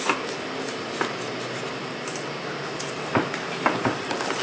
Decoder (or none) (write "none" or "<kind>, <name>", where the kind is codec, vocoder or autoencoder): none